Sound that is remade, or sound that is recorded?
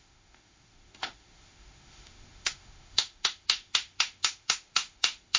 remade